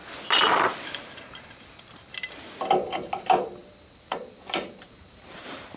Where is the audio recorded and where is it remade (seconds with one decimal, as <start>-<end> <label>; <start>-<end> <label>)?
0.0-3.6 recorded; 3.6-5.8 remade